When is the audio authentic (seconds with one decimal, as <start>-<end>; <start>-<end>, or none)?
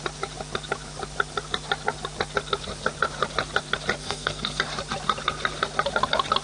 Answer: 0.0-4.0; 4.6-6.4